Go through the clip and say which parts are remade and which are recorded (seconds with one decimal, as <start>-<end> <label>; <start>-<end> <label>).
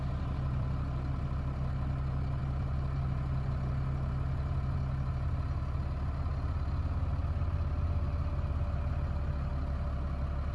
0.0-10.5 recorded